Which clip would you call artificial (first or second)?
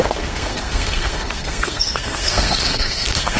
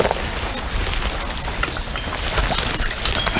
first